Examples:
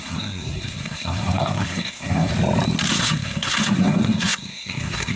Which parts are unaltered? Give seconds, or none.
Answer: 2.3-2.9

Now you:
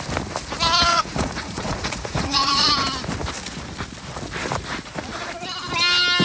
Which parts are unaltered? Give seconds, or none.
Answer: 0.0-0.9; 2.7-6.2

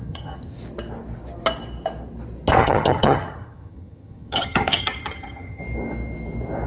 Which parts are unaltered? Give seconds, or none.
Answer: 0.6-2.6; 5.6-6.7

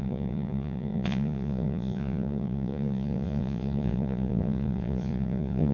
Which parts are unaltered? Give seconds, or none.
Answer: none

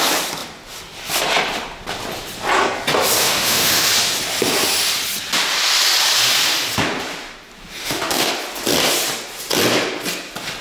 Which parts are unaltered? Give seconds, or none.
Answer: 0.0-3.2; 3.9-7.8; 8.3-10.6

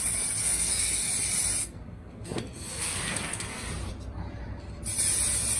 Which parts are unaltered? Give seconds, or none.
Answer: 0.0-0.4; 1.1-1.6; 3.7-5.6

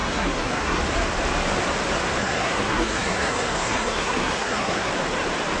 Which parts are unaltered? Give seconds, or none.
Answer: 0.8-2.2; 4.9-5.6